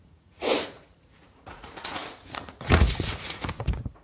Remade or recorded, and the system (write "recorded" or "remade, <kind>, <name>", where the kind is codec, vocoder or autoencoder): remade, vocoder, Vocos